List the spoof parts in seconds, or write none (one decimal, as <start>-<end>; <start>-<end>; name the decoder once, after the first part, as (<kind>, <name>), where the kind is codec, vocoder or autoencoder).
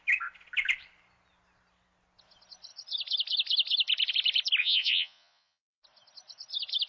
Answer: 4.6-5.8 (vocoder, Vocos)